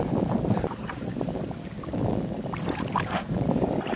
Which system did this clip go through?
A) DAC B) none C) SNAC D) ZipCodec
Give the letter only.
B